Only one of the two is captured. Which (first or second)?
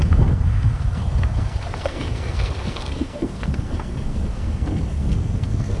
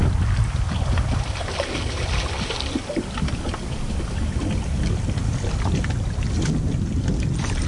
second